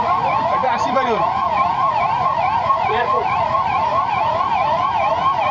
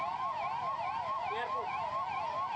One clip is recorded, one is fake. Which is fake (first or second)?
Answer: first